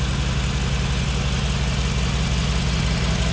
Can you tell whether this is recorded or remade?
recorded